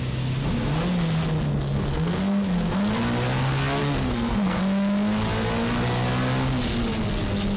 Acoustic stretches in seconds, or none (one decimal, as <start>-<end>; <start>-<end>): 0.0-1.5; 2.7-3.8; 4.6-7.6